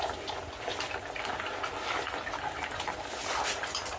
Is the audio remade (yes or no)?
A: no